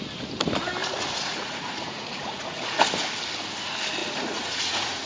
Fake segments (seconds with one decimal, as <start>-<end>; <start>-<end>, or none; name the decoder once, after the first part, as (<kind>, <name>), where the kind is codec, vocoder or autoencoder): 0.8-2.8 (vocoder, Vocos); 4.0-5.1